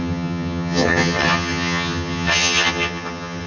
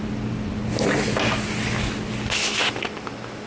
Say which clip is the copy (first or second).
first